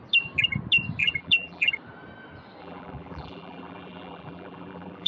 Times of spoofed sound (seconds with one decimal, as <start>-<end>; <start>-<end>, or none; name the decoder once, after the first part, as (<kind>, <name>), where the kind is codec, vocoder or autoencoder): 1.0-1.7 (vocoder, BigVGAN v2); 2.6-5.1